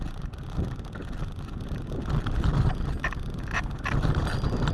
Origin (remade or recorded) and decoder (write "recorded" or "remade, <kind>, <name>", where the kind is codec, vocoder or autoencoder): recorded